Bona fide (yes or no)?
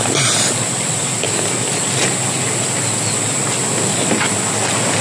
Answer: yes